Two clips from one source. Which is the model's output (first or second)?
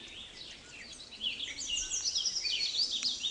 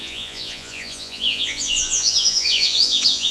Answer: second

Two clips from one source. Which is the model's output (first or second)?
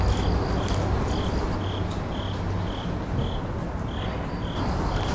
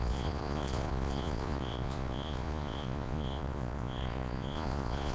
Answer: second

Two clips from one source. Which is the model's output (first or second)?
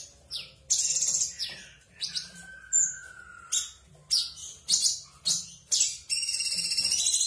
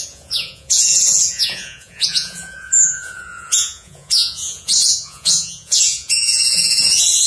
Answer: second